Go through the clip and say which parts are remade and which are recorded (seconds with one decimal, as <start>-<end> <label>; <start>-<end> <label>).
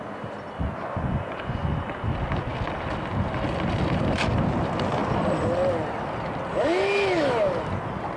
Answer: 0.0-0.8 recorded; 0.8-1.9 remade; 1.9-8.2 recorded